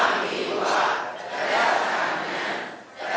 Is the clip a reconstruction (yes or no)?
no